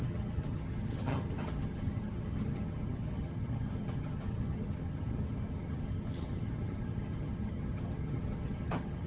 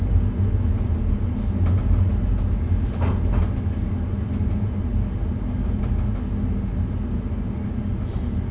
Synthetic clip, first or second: first